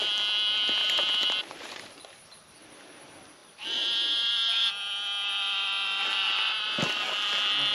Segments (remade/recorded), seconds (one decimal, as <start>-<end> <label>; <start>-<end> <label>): 0.0-0.8 recorded; 0.8-3.0 remade; 3.0-3.4 recorded; 3.4-4.7 remade; 4.7-7.7 recorded

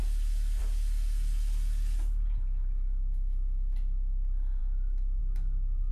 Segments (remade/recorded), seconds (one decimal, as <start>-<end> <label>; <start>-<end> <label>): 0.0-5.9 recorded

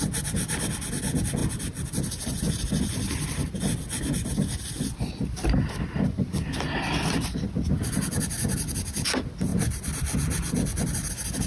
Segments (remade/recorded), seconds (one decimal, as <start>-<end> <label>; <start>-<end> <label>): 0.0-1.4 recorded; 1.4-4.6 remade; 4.6-9.5 recorded; 9.5-11.1 remade; 11.1-11.5 recorded

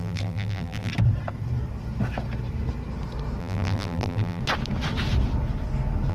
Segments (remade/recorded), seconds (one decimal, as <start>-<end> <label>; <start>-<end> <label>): 0.0-0.9 remade; 0.9-3.4 recorded; 3.4-4.4 remade; 4.4-6.1 recorded